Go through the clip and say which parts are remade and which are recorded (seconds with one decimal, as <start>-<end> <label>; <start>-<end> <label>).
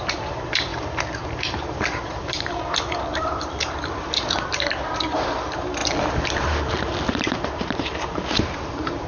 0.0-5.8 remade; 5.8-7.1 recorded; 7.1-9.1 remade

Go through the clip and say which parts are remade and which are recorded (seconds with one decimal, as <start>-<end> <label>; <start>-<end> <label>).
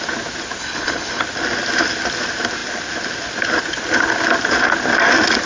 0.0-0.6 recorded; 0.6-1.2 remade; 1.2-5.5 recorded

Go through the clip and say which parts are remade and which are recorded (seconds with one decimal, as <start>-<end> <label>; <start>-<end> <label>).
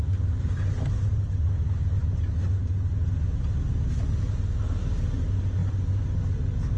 0.0-6.8 recorded